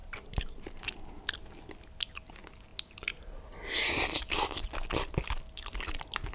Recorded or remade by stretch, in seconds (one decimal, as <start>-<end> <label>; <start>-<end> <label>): 0.0-1.2 remade; 1.2-6.3 recorded